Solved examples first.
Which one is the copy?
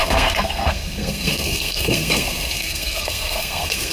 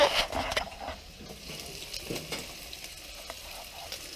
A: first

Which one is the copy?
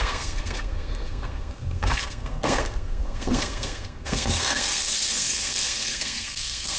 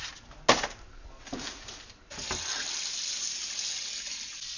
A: first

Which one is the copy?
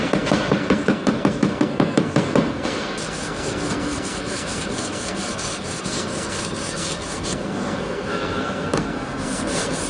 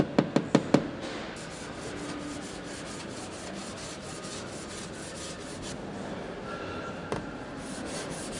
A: first